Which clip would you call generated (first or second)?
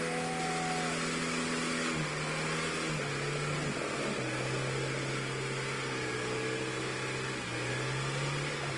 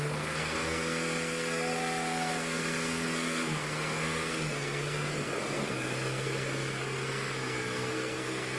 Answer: second